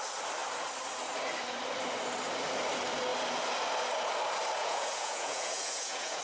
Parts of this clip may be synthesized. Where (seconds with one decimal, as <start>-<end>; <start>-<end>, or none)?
4.6-6.2

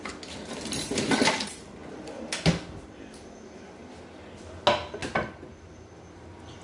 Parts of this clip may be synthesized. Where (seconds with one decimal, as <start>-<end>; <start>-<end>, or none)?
none

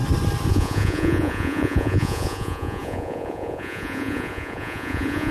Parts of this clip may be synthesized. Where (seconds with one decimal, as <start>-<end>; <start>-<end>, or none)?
0.5-5.3

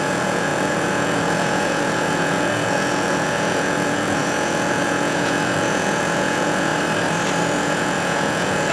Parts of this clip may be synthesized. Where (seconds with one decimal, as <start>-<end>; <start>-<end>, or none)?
0.0-6.7; 7.4-8.7

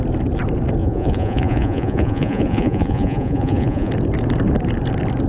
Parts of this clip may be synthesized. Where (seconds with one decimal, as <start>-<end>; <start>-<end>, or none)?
0.8-3.9

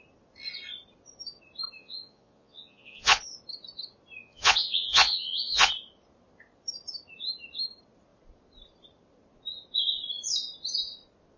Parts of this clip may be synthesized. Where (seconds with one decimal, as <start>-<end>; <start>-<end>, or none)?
1.8-3.2; 4.2-5.7